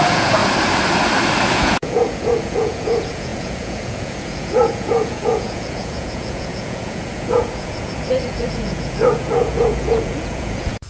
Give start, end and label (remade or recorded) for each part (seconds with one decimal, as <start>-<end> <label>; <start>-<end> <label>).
0.0-0.4 remade; 0.4-1.5 recorded; 1.5-10.9 remade